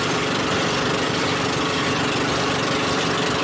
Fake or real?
fake